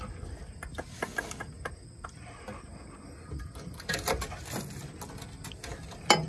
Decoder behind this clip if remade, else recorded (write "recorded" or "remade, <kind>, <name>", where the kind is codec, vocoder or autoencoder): recorded